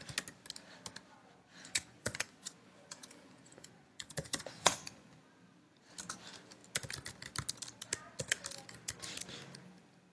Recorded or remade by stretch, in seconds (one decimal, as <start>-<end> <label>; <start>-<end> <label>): 0.0-1.5 recorded; 1.5-5.2 remade; 5.2-10.1 recorded